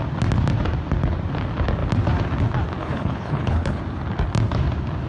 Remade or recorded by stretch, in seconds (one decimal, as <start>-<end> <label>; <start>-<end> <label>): 0.0-2.8 recorded; 2.8-3.8 remade; 3.8-5.1 recorded